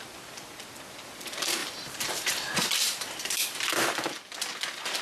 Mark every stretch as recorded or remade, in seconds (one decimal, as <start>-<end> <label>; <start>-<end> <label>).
0.0-1.6 recorded; 1.6-4.1 remade; 4.1-5.0 recorded